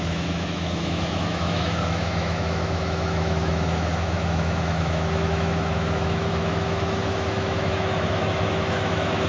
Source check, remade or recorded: remade